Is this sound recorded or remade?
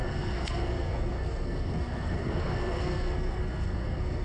remade